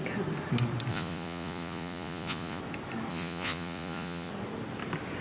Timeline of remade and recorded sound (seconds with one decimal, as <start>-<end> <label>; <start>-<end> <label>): 0.0-0.9 recorded; 0.9-2.6 remade; 2.6-3.1 recorded; 3.1-4.3 remade; 4.3-5.2 recorded